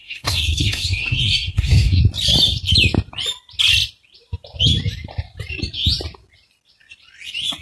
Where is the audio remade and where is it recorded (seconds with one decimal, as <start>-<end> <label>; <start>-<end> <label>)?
0.0-2.0 remade; 2.0-7.6 recorded